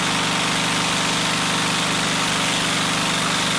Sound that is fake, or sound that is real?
real